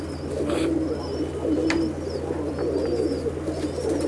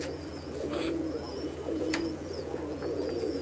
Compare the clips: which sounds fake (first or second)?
second